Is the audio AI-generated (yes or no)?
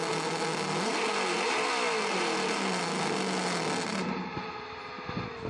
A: no